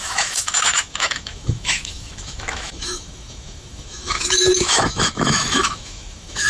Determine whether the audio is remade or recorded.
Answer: remade